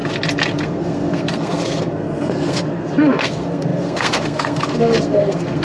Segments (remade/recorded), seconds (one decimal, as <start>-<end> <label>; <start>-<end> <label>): 0.0-0.6 recorded; 0.6-5.6 remade